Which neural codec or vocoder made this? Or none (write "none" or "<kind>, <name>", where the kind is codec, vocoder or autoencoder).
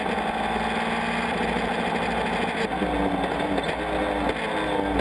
none